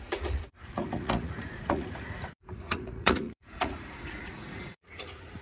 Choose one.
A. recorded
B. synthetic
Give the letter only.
B